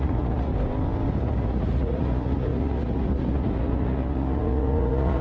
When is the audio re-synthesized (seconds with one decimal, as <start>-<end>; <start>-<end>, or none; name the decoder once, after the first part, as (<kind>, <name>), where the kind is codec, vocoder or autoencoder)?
0.0-0.5 (vocoder, Vocos); 1.2-5.2